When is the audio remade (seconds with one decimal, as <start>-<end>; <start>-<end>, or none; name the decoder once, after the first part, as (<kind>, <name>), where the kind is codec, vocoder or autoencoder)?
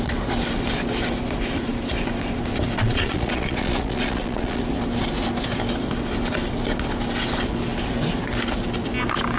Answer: 2.8-4.6 (vocoder, Vocos)